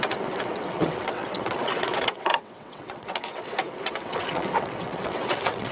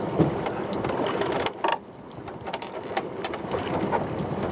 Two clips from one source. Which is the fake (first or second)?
first